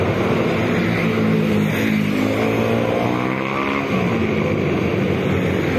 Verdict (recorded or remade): recorded